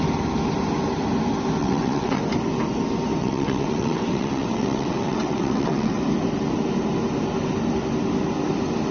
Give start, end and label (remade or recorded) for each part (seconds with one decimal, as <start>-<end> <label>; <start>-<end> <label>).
0.0-1.6 recorded; 1.6-2.2 remade; 2.2-3.2 recorded; 3.2-6.0 remade; 6.0-8.9 recorded